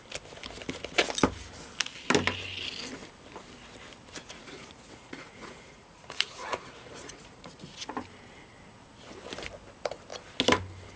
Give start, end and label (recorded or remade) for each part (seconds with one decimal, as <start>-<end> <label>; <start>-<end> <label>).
0.0-4.2 recorded; 4.2-7.9 remade; 7.9-11.0 recorded

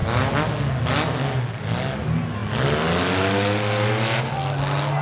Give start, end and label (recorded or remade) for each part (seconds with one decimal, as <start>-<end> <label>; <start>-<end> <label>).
0.0-5.0 recorded

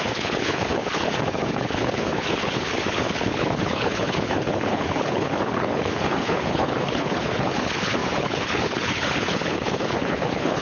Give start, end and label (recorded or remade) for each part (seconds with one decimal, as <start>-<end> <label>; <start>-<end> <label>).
0.0-10.6 remade

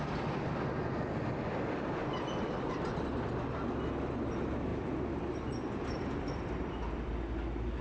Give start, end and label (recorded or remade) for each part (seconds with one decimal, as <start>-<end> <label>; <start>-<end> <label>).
0.0-2.0 recorded; 2.0-2.5 remade; 2.5-4.7 recorded; 4.7-7.2 remade; 7.2-7.8 recorded